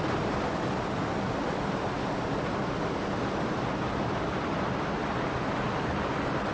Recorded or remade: recorded